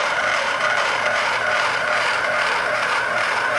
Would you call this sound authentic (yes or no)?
no